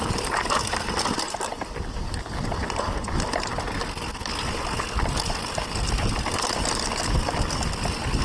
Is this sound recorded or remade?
recorded